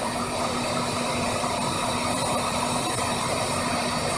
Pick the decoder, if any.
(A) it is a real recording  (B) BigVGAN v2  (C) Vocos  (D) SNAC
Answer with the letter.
B